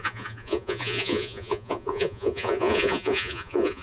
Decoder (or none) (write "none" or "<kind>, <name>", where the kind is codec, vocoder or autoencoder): vocoder, Vocos